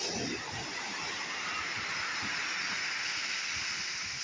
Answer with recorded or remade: recorded